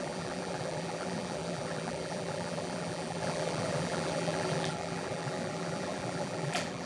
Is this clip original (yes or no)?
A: no